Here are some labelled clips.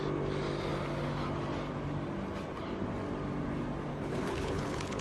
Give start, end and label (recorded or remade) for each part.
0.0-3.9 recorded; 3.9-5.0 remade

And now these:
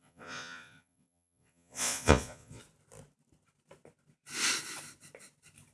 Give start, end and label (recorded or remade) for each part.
0.0-2.6 remade; 2.6-5.7 recorded

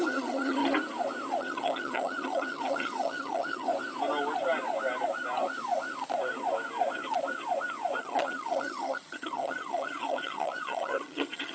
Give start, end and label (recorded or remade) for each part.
0.0-0.6 remade; 0.6-1.4 recorded; 1.4-3.7 remade; 3.7-8.0 recorded; 8.0-11.5 remade